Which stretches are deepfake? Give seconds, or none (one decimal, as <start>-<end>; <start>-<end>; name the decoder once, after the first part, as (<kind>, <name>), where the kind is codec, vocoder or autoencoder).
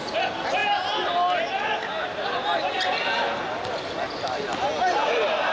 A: none